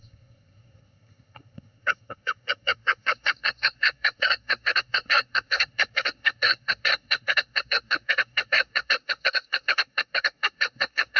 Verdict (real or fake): fake